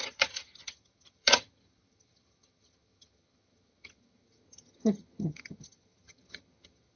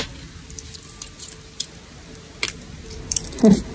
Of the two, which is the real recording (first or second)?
second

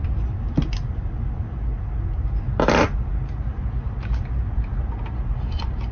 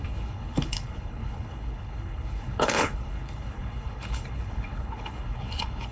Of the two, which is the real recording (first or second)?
first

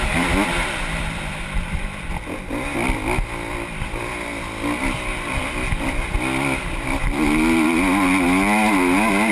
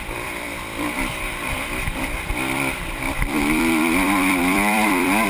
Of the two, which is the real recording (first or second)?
first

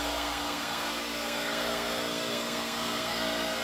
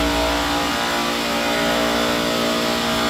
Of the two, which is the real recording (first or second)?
second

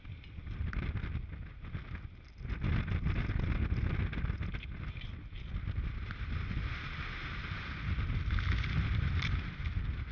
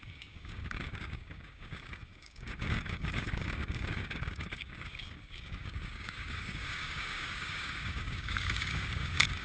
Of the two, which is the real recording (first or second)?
first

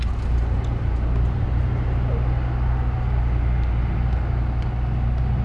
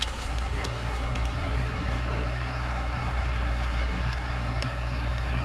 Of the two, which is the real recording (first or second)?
first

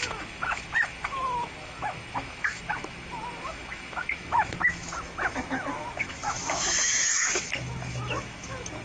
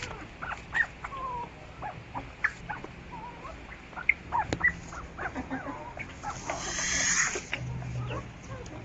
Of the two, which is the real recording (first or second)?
second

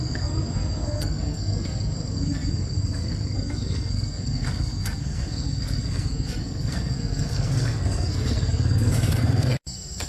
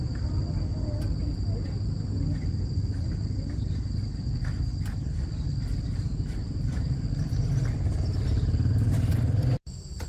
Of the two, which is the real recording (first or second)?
second